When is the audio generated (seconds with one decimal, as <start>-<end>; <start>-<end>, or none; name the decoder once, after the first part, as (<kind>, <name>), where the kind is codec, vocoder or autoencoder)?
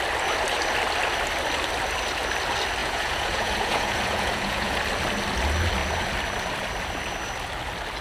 2.8-4.8 (vocoder, Vocos)